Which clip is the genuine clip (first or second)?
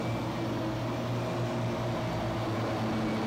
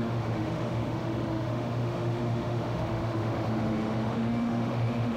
first